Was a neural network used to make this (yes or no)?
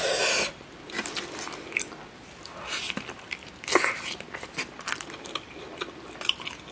no